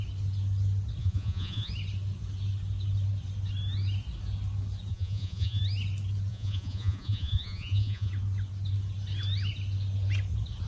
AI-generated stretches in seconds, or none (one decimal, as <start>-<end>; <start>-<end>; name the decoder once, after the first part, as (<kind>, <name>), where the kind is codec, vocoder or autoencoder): 1.0-1.7 (vocoder, Vocos); 4.9-5.6; 6.3-8.1